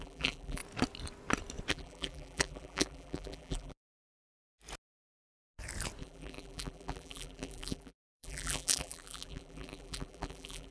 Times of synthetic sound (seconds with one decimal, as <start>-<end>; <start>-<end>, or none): 0.0-0.6; 1.7-4.3; 6.0-10.7